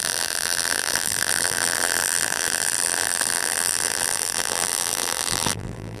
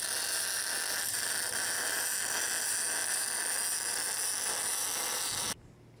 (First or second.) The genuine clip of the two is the second